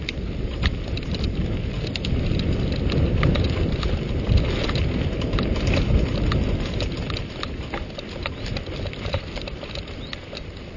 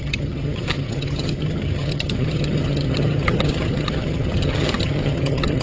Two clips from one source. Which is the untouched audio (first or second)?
first